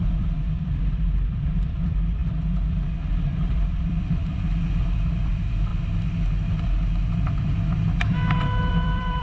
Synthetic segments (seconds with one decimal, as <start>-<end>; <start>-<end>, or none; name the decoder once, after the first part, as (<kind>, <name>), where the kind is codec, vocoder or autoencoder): 0.0-2.2 (vocoder, BigVGAN v2); 3.1-5.7; 8.7-9.2